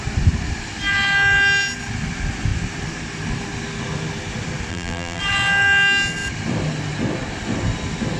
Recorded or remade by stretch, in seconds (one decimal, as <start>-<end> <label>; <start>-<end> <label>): 0.0-4.7 recorded; 4.7-5.2 remade; 5.2-8.2 recorded